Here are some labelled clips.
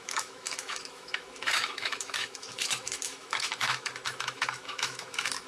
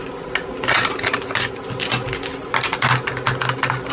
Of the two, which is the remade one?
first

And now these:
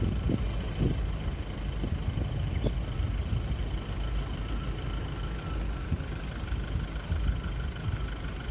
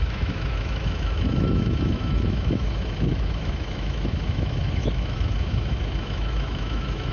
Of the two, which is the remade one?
second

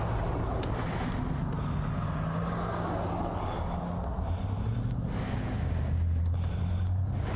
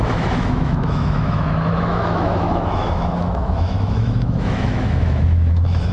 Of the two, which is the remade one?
second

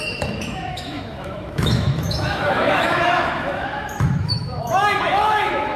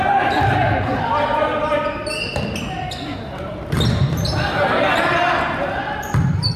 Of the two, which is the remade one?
first